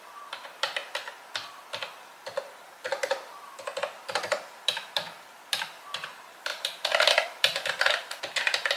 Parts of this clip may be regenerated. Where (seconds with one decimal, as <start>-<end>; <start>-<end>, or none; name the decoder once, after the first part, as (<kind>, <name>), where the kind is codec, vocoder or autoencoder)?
0.0-0.8 (vocoder, BigVGAN v2); 2.4-8.8